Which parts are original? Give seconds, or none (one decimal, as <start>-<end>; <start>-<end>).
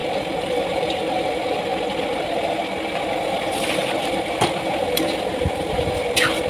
1.7-3.0